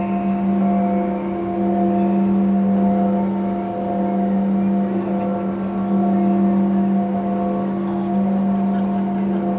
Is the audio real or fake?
real